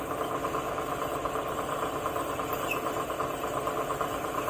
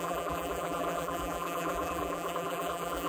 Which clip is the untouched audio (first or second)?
first